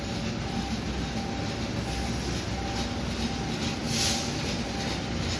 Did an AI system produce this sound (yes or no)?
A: no